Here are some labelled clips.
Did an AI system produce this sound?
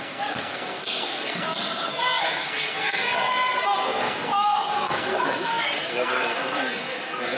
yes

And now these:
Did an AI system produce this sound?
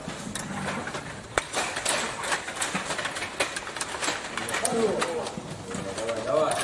no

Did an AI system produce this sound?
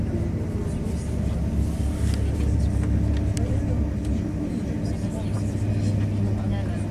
no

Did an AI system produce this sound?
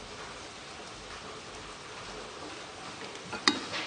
no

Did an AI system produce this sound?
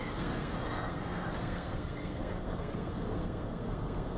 yes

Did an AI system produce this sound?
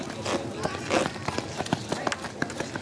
no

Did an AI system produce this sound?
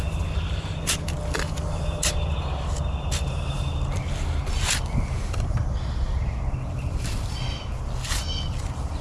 no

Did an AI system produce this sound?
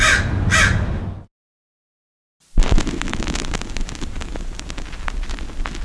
no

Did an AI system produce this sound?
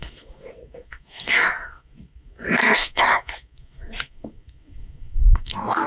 yes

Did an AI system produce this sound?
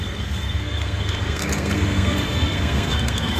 yes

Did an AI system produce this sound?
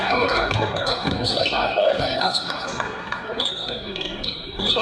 yes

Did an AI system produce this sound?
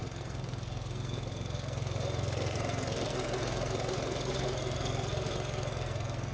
yes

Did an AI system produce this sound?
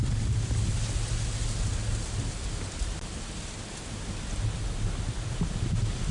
no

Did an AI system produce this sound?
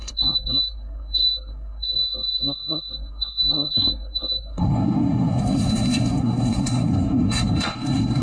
yes